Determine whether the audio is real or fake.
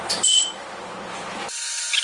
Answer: real